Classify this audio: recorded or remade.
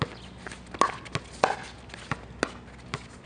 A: recorded